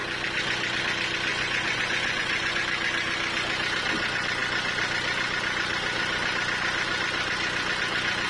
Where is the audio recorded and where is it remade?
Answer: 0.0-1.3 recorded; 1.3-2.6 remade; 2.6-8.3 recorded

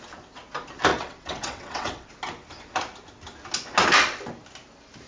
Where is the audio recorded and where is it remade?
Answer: 0.0-0.9 recorded; 0.9-2.1 remade; 2.1-5.1 recorded

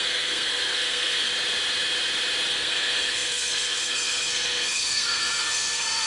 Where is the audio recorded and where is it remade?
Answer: 0.0-1.3 remade; 1.3-2.5 recorded; 2.5-6.1 remade

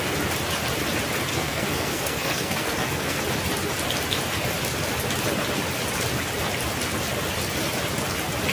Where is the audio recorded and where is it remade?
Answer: 0.0-1.3 recorded; 1.3-3.2 remade; 3.2-8.5 recorded

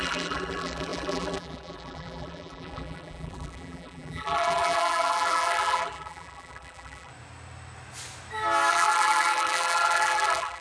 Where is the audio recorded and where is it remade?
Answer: 0.0-7.1 remade; 7.1-8.7 recorded; 8.7-10.6 remade

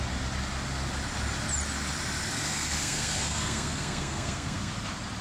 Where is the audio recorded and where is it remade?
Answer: 0.0-2.3 recorded; 2.3-4.7 remade; 4.7-5.2 recorded

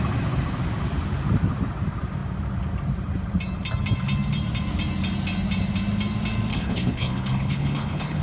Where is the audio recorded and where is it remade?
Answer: 0.0-6.5 recorded; 6.5-8.2 remade

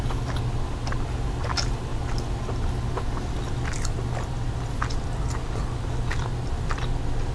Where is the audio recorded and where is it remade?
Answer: 0.0-7.3 recorded